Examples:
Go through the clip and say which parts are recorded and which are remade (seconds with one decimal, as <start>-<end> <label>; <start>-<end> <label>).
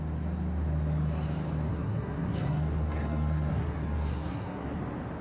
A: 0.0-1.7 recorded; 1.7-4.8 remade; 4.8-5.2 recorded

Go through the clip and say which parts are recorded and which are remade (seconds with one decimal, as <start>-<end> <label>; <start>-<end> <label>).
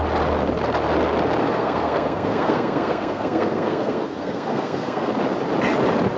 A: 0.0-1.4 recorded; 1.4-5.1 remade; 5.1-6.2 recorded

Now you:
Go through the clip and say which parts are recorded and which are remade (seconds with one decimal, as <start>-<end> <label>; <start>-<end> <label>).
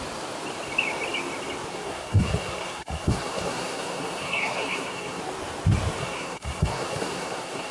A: 0.0-1.7 recorded; 1.7-5.2 remade; 5.2-6.0 recorded; 6.0-7.7 remade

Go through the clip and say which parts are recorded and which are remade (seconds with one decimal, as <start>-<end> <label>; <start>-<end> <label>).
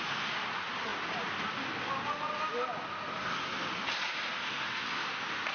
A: 0.0-5.5 recorded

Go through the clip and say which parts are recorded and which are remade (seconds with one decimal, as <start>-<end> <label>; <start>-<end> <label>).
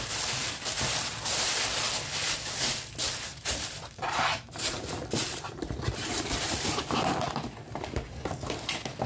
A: 0.0-0.4 recorded; 0.4-1.5 remade; 1.5-3.3 recorded; 3.3-6.8 remade; 6.8-9.1 recorded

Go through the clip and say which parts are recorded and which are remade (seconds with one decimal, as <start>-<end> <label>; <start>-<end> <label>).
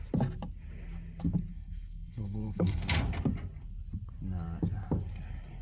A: 0.0-1.5 recorded; 1.5-2.8 remade; 2.8-5.6 recorded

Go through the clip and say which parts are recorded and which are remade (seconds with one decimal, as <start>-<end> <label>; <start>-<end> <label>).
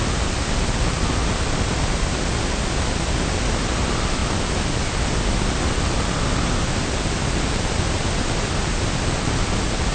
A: 0.0-9.9 recorded